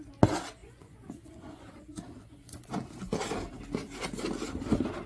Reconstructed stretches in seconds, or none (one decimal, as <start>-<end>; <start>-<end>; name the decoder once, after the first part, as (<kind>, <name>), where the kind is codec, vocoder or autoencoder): 0.6-2.7 (vocoder, Vocos)